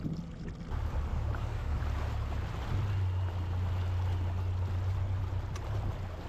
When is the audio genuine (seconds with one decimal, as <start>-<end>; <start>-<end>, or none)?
0.0-1.1; 1.8-6.3